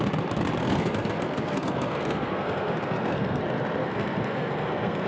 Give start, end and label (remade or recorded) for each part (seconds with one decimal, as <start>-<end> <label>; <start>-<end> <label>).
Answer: 0.0-0.6 recorded; 0.6-3.4 remade; 3.4-3.8 recorded; 3.8-5.1 remade